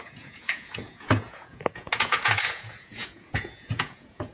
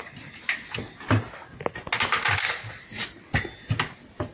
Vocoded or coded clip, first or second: first